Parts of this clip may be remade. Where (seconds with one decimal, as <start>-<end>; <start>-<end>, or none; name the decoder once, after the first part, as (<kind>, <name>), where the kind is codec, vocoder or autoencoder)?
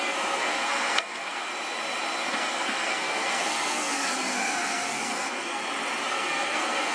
0.0-1.5 (codec, SNAC); 2.3-5.6; 6.1-6.9